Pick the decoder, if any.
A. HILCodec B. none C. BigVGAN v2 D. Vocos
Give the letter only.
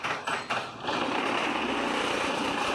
B